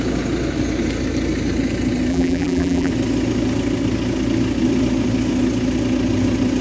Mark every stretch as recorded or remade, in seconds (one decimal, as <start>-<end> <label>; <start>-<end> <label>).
0.0-2.1 recorded; 2.1-2.9 remade; 2.9-6.6 recorded